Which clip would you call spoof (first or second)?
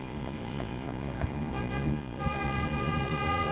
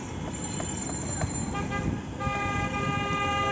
first